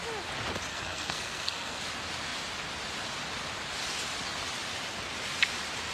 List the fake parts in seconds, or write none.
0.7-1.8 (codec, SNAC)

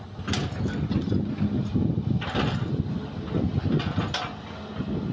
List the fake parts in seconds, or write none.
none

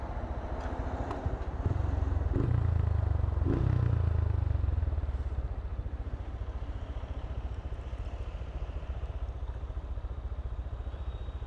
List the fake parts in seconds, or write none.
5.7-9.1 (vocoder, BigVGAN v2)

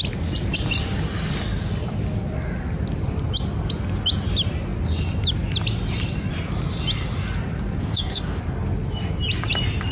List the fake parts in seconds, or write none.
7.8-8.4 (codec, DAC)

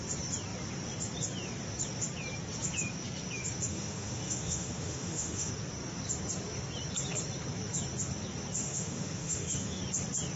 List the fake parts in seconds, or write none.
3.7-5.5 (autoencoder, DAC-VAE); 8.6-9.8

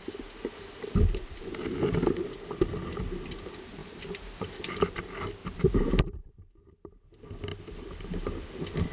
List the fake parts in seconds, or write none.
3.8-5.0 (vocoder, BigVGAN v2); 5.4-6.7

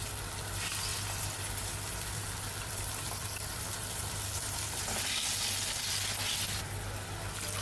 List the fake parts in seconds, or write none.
0.9-5.5 (vocoder, BigVGAN v2)